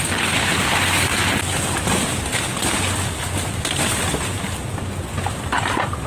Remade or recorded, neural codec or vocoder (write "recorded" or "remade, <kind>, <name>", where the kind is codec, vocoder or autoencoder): recorded